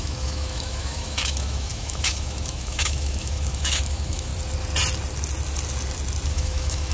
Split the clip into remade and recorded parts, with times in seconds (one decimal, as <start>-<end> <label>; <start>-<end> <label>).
0.0-4.3 remade; 4.3-6.3 recorded; 6.3-6.9 remade